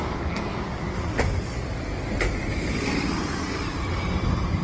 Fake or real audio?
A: real